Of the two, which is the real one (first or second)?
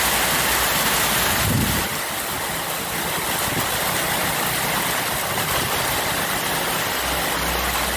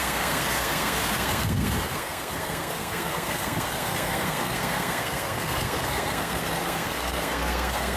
first